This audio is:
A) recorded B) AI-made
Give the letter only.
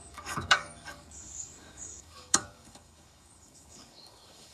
B